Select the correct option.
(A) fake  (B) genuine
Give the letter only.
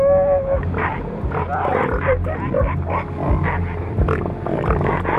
B